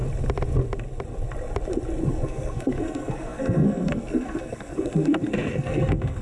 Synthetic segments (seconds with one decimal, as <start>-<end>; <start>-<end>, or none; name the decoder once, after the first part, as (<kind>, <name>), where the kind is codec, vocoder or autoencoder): 2.1-6.2 (codec, SNAC)